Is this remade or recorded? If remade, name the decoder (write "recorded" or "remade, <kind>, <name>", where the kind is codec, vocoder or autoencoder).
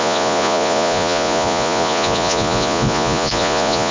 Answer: remade, vocoder, Vocos